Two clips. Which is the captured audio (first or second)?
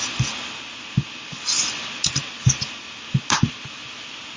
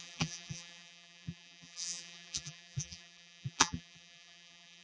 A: first